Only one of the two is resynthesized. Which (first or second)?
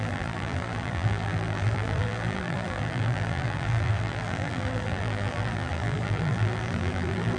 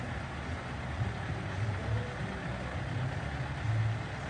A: first